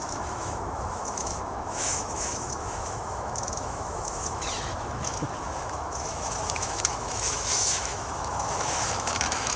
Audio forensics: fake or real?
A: fake